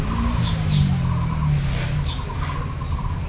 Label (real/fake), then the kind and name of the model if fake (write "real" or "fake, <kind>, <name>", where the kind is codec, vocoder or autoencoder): real